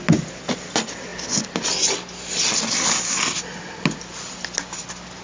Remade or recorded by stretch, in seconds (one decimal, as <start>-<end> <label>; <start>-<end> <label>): 0.0-5.2 recorded